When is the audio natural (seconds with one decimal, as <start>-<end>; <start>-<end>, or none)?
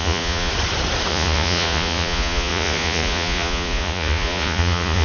0.5-1.1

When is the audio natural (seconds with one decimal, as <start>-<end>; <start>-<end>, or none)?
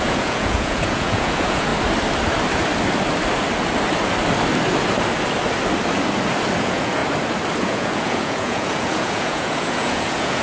1.7-6.6; 7.0-7.6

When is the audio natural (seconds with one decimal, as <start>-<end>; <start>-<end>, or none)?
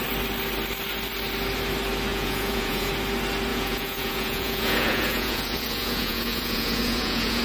0.0-2.1; 2.9-3.5